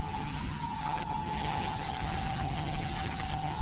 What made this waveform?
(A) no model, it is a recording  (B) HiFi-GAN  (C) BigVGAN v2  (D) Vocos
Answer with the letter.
B